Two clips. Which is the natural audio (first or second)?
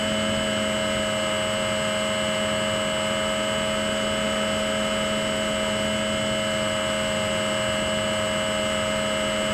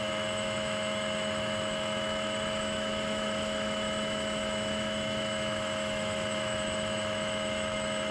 first